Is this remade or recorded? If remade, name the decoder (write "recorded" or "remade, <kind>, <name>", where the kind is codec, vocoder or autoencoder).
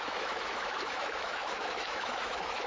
remade, autoencoder, DAC-VAE